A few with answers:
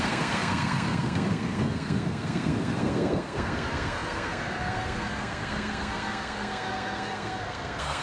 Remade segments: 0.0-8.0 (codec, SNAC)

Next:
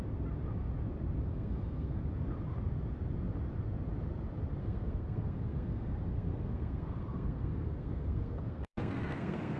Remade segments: 1.3-2.0 (codec, SNAC); 4.6-9.6

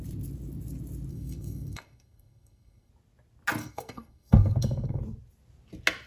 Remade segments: 1.1-2.9 (codec, SNAC); 3.6-5.0